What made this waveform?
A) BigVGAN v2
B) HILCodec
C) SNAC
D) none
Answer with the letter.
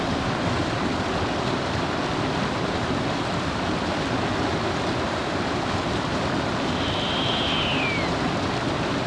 D